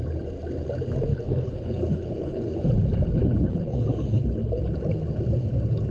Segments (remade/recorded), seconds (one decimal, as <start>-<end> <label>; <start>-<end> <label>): 0.0-1.1 recorded; 1.1-2.7 remade; 2.7-3.2 recorded; 3.2-4.6 remade; 4.6-5.9 recorded